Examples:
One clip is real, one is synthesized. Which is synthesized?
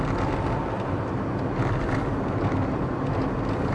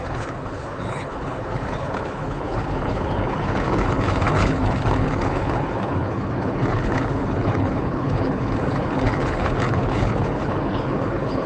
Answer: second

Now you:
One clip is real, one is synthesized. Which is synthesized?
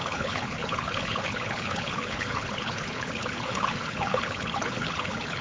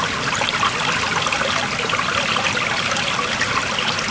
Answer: first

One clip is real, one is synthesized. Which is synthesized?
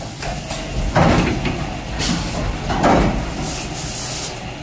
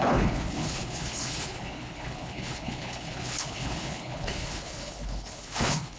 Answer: second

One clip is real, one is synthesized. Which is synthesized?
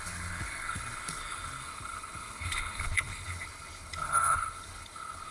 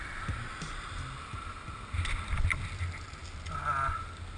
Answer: first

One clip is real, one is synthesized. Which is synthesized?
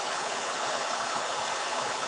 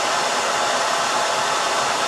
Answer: first